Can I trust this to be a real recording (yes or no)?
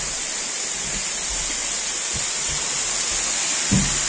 yes